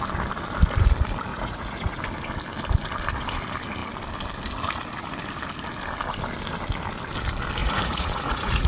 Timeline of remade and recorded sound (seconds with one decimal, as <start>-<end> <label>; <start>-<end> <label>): 0.0-1.3 recorded; 1.3-2.0 remade; 2.0-7.6 recorded; 7.6-8.7 remade